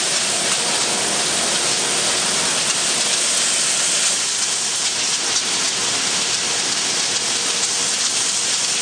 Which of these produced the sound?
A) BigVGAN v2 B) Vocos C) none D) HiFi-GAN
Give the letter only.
C